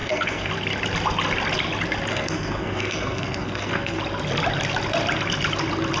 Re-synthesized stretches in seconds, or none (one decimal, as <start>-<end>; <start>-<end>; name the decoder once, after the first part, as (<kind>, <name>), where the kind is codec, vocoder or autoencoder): 0.0-0.5 (codec, SNAC); 2.1-4.0